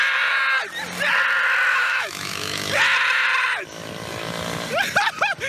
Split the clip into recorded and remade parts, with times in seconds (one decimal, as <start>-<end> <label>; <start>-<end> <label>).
0.0-1.7 recorded; 1.7-2.7 remade; 2.7-5.5 recorded